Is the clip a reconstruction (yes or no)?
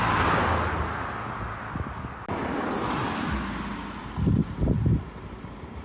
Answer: no